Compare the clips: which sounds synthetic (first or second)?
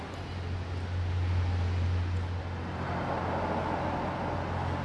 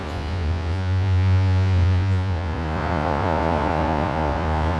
second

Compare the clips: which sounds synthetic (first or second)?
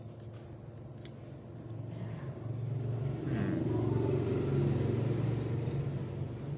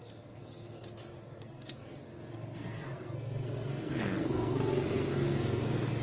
second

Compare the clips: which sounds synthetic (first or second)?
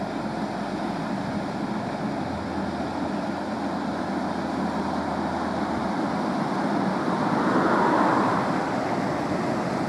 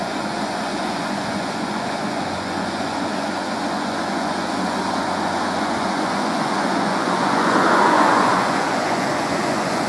second